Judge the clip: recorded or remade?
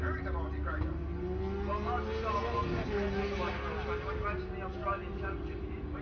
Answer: recorded